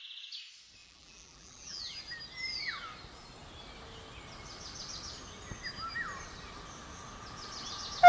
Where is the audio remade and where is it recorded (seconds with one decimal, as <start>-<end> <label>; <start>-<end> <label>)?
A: 0.0-0.8 recorded; 0.8-1.8 remade; 1.8-8.1 recorded